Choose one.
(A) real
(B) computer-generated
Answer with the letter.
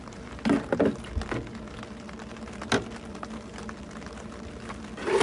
A